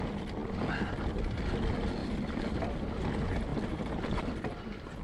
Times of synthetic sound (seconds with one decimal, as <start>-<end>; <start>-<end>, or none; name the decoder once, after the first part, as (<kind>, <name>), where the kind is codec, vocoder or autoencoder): 2.0-2.6 (vocoder, BigVGAN v2)